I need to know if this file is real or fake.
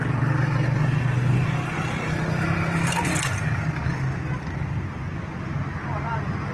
real